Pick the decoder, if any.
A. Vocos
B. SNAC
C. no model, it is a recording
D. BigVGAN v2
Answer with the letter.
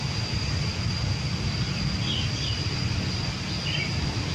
C